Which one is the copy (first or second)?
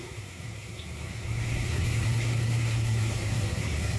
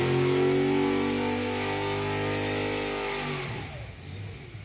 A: first